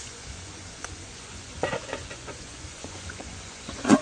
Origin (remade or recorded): remade